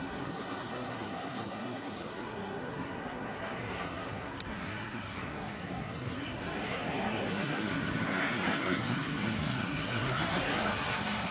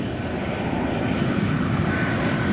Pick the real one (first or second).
second